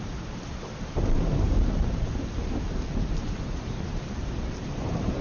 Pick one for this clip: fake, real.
fake